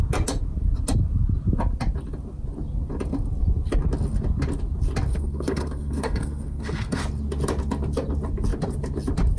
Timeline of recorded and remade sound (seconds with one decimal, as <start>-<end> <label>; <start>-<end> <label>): 0.0-5.1 recorded; 5.1-7.0 remade; 7.0-9.4 recorded